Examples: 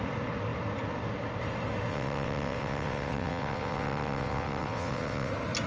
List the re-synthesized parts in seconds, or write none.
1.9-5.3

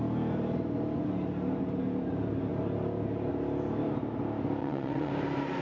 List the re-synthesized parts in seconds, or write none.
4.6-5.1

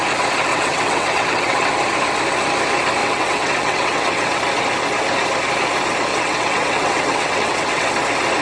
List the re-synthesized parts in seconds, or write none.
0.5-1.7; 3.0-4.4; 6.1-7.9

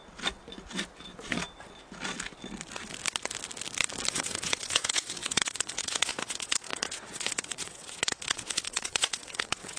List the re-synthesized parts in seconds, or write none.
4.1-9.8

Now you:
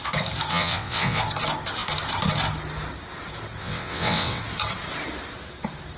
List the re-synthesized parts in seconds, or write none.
0.5-1.2; 3.6-4.4

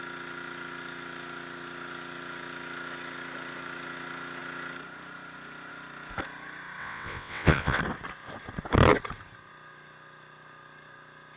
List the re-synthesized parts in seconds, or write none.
6.8-7.8

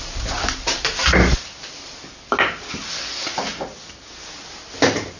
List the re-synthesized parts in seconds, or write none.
none

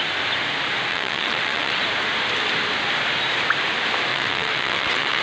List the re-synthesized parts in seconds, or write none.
0.9-1.8; 4.1-5.2